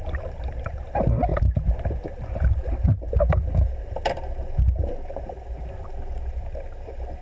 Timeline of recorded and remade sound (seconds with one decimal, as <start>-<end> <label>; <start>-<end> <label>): 0.0-7.2 recorded